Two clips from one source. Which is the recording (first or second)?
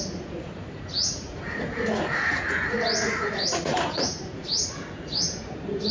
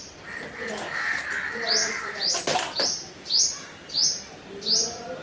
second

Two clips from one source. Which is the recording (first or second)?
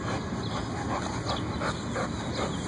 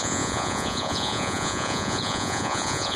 first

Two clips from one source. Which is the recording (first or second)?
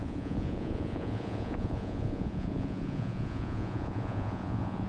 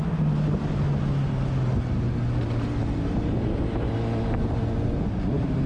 second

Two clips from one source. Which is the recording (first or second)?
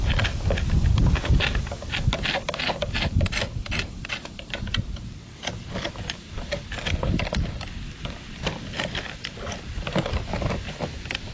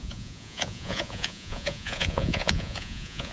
first